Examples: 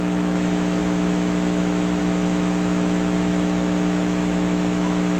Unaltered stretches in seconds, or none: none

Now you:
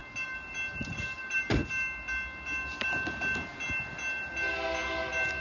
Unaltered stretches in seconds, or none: 0.0-5.4

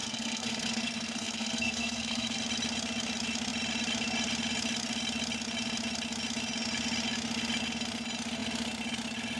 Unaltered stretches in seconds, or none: 2.4-9.4

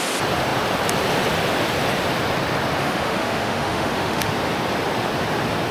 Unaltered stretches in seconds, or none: 0.0-2.8; 4.3-5.7

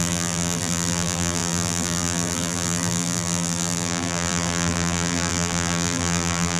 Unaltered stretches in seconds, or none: none